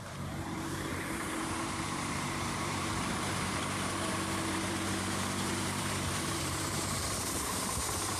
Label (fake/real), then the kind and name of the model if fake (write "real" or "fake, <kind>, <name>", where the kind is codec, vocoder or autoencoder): fake, vocoder, BigVGAN v2